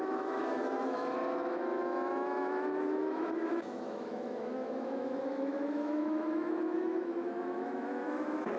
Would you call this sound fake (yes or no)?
yes